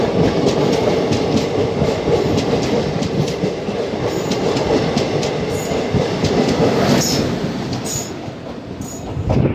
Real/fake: real